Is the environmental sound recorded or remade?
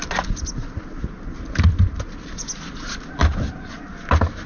recorded